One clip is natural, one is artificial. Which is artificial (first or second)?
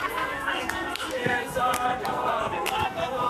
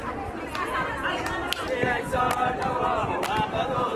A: first